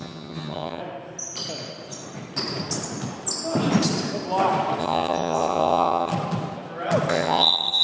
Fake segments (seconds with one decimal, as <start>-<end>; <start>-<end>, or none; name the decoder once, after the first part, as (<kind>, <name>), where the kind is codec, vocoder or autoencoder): 0.0-0.8 (vocoder, HiFi-GAN); 4.8-6.1; 7.1-7.8